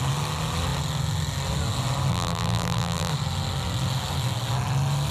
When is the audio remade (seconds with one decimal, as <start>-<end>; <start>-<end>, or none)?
2.1-3.1